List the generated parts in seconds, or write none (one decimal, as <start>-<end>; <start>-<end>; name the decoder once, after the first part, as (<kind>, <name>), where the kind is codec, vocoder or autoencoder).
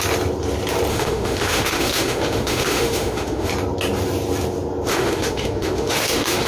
0.9-3.5 (autoencoder, DAC-VAE); 4.9-6.5